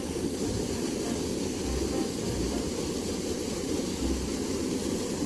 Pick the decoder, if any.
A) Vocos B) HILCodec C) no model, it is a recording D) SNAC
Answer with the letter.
C